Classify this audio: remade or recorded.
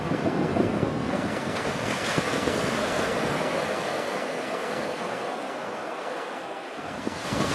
remade